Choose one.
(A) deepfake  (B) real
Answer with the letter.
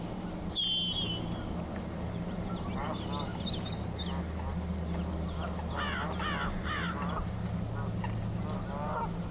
B